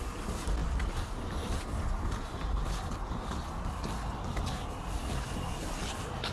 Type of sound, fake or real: real